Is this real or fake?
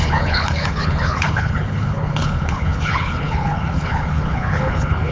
fake